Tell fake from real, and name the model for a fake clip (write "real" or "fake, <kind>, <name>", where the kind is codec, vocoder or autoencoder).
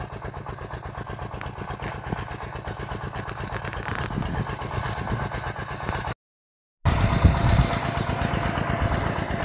real